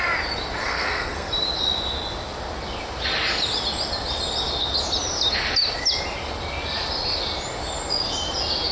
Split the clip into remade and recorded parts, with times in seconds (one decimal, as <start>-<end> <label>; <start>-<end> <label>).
0.0-0.6 recorded; 0.6-1.3 remade; 1.3-8.7 recorded